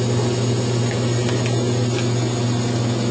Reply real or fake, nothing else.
real